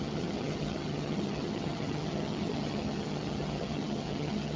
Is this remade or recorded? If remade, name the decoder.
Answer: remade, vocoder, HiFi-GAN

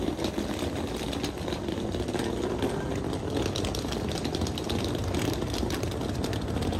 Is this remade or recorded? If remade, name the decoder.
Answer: recorded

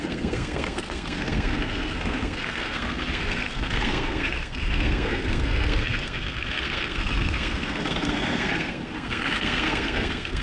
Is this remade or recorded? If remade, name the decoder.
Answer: remade, codec, SNAC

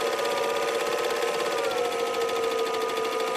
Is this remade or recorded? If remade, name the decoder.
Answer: recorded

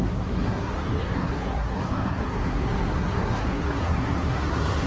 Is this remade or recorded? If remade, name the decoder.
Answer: remade, codec, SNAC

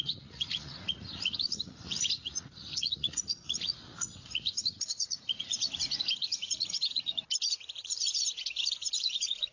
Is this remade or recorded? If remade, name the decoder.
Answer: remade, vocoder, Vocos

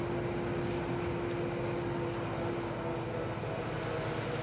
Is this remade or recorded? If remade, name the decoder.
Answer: recorded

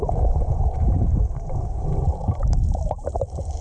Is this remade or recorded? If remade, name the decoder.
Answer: remade, vocoder, BigVGAN v2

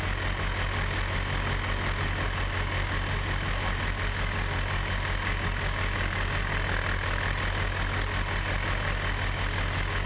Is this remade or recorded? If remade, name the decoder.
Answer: recorded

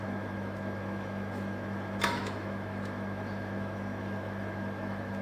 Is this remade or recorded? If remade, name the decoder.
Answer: remade, autoencoder, DAC-VAE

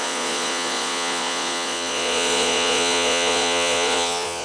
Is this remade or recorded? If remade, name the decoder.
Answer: remade, vocoder, Vocos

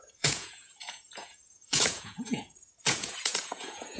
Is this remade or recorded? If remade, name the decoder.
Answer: remade, vocoder, Vocos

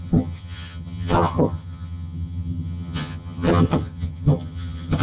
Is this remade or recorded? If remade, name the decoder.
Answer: remade, vocoder, HiFi-GAN